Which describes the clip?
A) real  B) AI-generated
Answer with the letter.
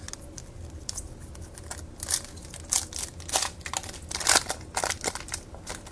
A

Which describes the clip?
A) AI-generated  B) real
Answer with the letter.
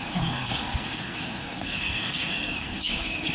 A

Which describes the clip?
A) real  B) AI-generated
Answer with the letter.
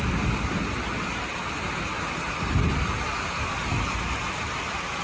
B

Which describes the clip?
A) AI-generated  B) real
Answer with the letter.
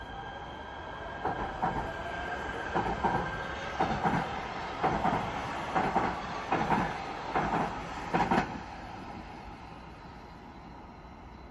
B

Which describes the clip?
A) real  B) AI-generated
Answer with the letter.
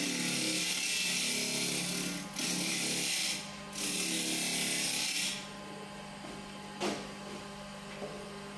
A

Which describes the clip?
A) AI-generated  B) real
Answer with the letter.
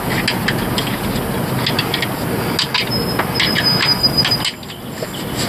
B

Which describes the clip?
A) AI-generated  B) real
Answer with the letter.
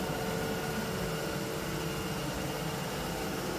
B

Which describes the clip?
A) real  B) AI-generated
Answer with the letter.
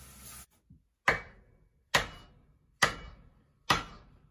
A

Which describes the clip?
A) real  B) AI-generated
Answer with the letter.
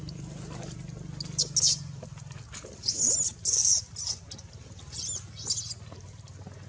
A